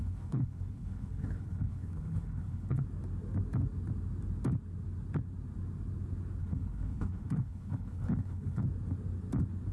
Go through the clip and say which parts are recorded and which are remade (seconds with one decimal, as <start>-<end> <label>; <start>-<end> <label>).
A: 0.0-2.8 remade; 2.8-6.4 recorded; 6.4-8.6 remade; 8.6-9.7 recorded